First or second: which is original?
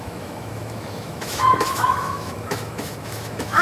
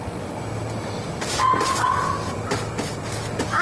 second